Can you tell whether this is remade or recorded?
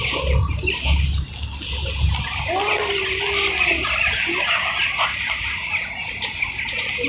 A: recorded